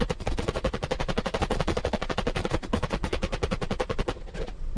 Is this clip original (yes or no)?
no